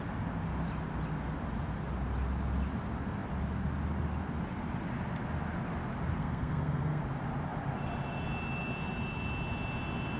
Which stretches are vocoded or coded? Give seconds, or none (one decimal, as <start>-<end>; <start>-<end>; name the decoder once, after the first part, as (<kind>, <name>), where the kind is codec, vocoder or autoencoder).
6.2-7.0 (codec, SNAC)

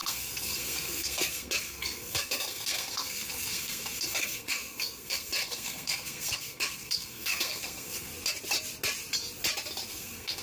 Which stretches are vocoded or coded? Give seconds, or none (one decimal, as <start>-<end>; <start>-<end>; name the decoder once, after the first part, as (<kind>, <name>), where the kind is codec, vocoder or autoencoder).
0.0-8.1 (codec, SNAC); 9.9-10.4

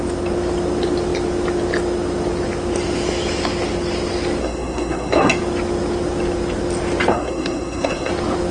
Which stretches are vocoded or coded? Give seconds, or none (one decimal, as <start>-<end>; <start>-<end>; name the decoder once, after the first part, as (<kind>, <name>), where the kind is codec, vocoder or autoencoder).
4.4-5.3 (codec, SNAC); 7.1-8.1

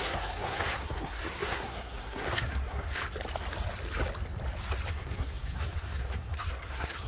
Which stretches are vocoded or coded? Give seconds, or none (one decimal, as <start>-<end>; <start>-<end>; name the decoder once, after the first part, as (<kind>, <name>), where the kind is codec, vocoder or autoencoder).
0.0-3.0 (codec, SNAC); 4.9-7.1

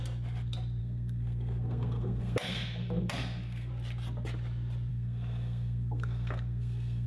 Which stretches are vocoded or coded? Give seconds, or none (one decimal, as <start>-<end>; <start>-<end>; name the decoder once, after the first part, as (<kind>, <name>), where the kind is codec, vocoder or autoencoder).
0.8-3.7 (codec, SNAC); 4.9-7.1

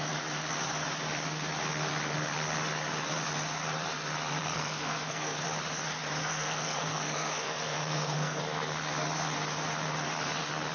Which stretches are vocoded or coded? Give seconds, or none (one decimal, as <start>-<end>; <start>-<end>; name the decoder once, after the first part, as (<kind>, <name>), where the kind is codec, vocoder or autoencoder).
4.4-5.4 (codec, SNAC); 6.2-8.4

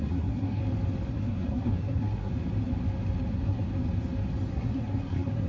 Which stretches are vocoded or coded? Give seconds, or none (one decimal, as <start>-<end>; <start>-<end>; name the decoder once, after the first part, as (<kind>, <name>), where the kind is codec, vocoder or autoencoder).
0.0-0.6 (codec, SNAC); 1.1-2.3; 3.3-3.7; 4.5-5.5

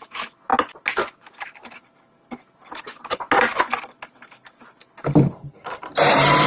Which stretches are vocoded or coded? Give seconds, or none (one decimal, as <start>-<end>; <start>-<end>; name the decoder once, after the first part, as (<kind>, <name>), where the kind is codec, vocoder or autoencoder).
none